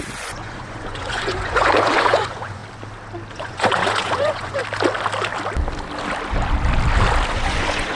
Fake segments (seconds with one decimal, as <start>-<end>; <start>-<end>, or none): 0.0-2.6; 3.3-4.6; 7.3-8.0

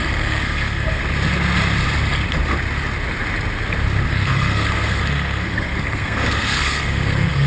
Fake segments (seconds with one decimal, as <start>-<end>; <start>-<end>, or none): 0.0-1.0; 4.1-7.5

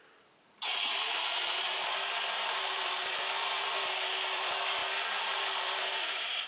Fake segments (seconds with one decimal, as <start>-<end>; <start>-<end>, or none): 0.0-6.5